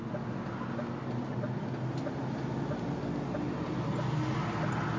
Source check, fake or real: real